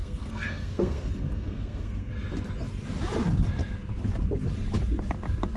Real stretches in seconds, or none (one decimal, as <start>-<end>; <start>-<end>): 2.1-5.6